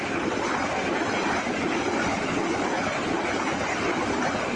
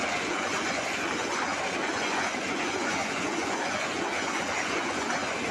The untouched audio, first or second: first